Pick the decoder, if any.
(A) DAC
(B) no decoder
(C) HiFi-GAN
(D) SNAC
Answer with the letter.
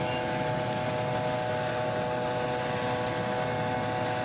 B